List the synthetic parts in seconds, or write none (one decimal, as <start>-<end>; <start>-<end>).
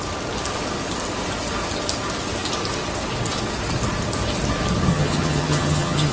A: 4.9-6.1